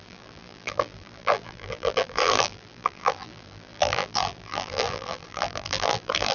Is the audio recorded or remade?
remade